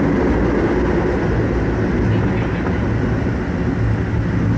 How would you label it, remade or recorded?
recorded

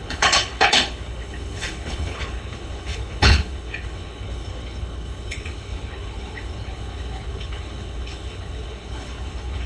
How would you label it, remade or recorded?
remade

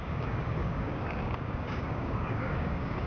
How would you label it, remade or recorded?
remade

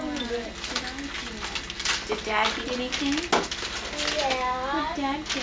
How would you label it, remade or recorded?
recorded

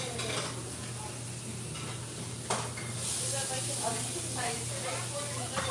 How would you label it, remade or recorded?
recorded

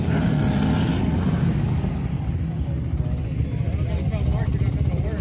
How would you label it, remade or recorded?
recorded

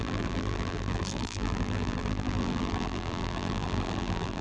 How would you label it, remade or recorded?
remade